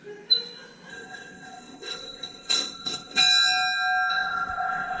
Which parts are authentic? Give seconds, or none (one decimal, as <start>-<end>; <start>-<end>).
0.0-0.9; 3.2-4.1